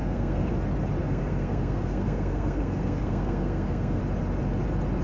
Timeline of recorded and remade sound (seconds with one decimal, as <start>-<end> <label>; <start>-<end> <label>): 0.0-0.5 remade; 0.5-1.0 recorded; 1.0-4.0 remade; 4.0-5.0 recorded